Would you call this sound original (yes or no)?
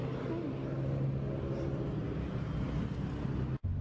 yes